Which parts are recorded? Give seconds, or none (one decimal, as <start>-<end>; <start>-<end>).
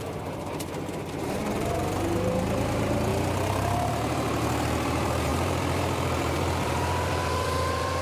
none